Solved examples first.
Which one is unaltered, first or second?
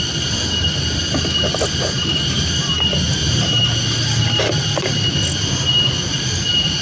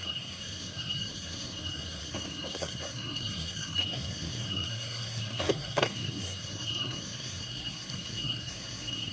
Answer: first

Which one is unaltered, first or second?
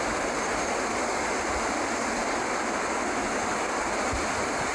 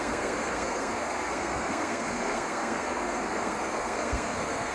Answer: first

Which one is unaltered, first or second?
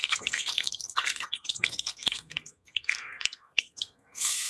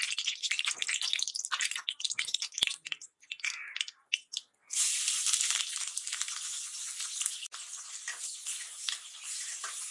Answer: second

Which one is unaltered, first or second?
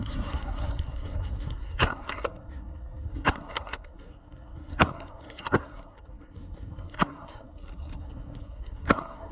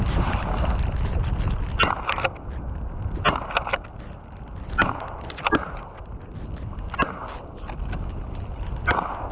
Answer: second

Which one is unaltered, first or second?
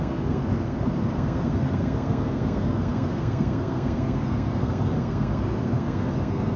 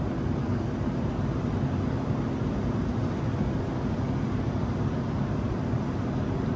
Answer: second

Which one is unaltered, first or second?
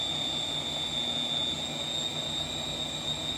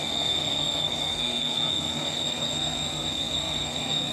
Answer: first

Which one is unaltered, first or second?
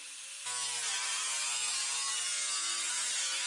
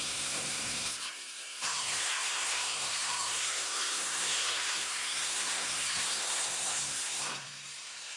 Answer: first